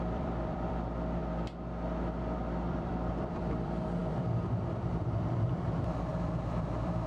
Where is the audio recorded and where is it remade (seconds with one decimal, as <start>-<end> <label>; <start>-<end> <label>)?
0.0-1.2 remade; 1.2-2.7 recorded; 2.7-7.1 remade